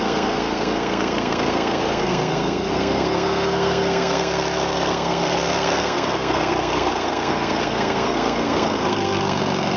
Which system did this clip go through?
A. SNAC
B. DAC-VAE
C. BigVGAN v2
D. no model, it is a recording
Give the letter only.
A